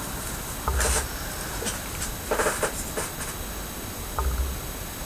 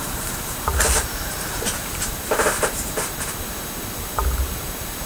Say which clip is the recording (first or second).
first